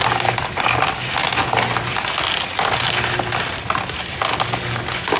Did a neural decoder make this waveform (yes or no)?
no